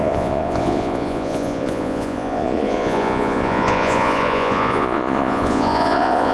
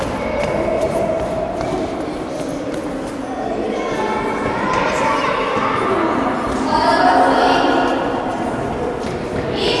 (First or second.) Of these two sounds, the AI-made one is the first